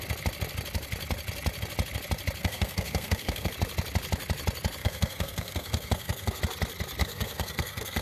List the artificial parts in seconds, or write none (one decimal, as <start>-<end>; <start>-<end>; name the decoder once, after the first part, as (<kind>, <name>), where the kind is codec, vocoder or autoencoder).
2.4-3.5 (codec, SNAC); 4.8-6.4; 7.0-8.0